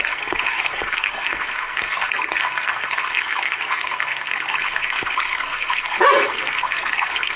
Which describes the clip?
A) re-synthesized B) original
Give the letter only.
A